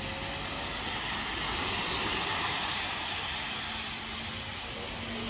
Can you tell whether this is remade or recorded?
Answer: recorded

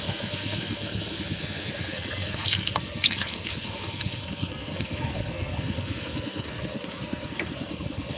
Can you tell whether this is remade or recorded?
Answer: remade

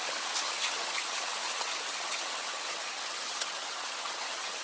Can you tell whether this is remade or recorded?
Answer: remade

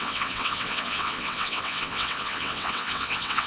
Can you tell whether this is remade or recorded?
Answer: remade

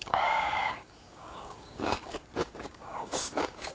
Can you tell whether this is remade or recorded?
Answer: remade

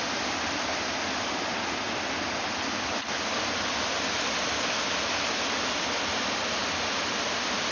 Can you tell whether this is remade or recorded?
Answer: recorded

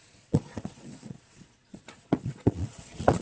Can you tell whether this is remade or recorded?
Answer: remade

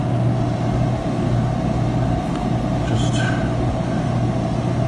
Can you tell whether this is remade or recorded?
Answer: recorded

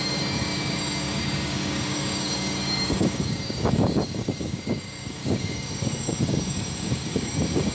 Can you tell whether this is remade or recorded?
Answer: remade